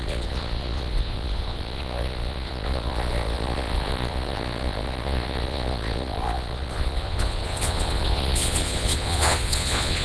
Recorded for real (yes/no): no